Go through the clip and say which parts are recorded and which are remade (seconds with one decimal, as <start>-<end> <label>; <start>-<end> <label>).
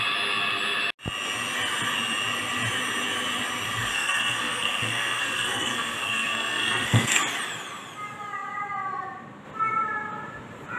0.0-3.9 recorded; 3.9-7.2 remade; 7.2-10.8 recorded